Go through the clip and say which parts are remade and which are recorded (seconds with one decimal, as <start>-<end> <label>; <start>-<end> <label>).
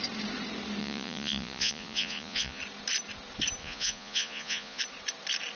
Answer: 0.0-0.8 recorded; 0.8-2.6 remade; 2.6-3.6 recorded; 3.6-4.8 remade; 4.8-5.6 recorded